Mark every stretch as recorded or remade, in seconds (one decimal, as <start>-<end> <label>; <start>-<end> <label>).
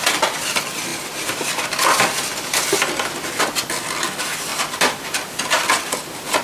0.0-4.5 recorded; 4.5-5.8 remade; 5.8-6.4 recorded